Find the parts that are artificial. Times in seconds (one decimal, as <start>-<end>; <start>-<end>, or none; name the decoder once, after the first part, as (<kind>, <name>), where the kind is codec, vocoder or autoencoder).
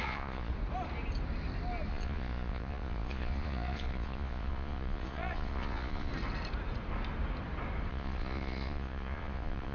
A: 0.0-0.5 (vocoder, Vocos); 1.9-6.1; 7.9-9.7